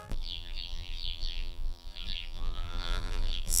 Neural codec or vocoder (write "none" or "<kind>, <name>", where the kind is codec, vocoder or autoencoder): vocoder, BigVGAN v2